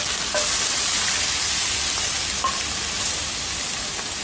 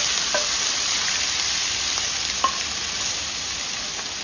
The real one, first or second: first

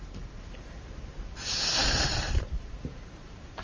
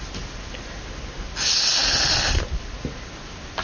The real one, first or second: second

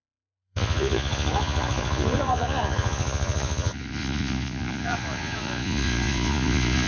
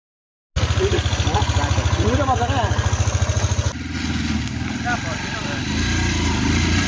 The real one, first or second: second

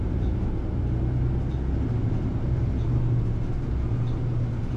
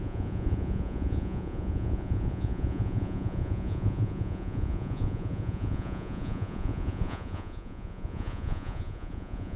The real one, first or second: first